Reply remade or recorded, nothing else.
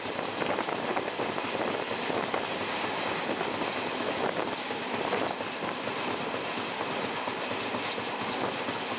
recorded